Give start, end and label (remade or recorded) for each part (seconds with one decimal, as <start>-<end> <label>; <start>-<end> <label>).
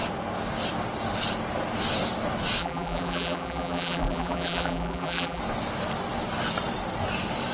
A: 0.0-2.6 recorded; 2.6-5.4 remade; 5.4-7.5 recorded